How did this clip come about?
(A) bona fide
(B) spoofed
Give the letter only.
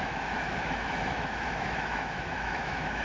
B